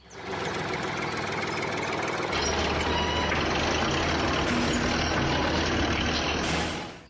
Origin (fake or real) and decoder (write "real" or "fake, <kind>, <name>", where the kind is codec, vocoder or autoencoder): real